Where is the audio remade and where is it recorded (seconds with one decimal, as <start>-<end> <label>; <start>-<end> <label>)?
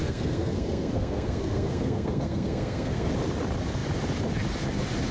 0.0-3.1 remade; 3.1-5.1 recorded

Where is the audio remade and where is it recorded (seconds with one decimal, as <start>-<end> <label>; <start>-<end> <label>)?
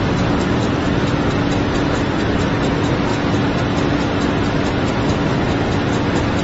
0.0-6.4 recorded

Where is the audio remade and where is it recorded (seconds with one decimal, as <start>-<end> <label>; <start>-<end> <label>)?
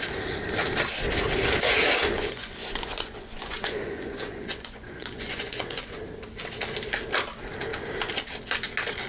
0.0-2.0 recorded; 2.0-6.0 remade; 6.0-9.1 recorded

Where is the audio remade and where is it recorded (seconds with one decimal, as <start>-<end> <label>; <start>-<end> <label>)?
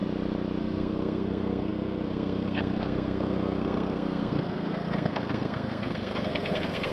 0.0-0.6 recorded; 0.6-6.9 remade